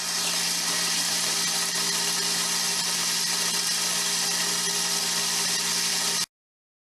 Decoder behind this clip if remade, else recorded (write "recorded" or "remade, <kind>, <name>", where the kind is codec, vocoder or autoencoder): recorded